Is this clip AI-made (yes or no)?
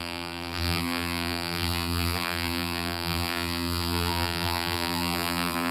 yes